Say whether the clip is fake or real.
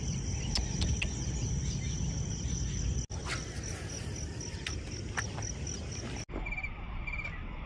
real